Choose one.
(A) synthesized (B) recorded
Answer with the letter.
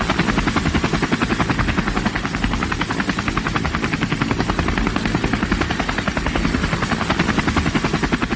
B